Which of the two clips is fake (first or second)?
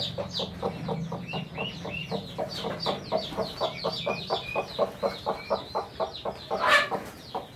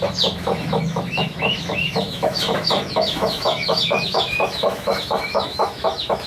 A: second